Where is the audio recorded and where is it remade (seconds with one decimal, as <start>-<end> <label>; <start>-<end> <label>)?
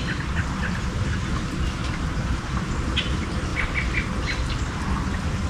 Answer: 0.0-1.8 recorded; 1.8-2.6 remade; 2.6-5.5 recorded